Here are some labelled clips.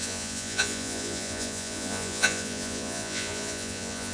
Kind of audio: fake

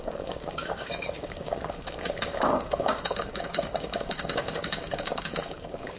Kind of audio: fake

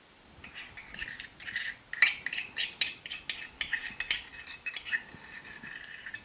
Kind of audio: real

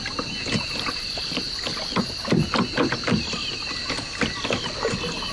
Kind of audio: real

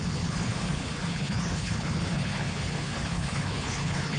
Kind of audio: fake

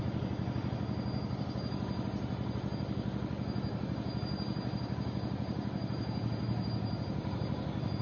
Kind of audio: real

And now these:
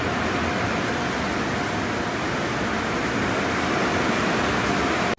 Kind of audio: real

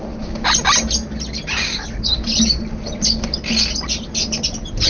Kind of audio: real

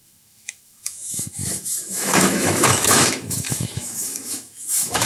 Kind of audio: fake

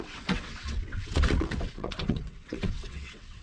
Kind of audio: fake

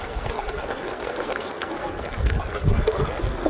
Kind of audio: fake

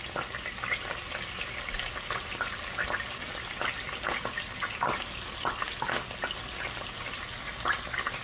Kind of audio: real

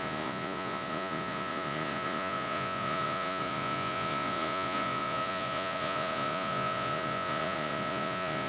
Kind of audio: fake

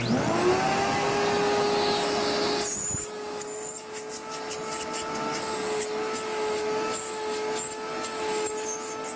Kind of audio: real